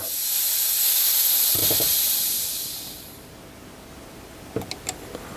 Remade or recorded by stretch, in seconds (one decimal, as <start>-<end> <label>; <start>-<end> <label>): 0.0-5.4 recorded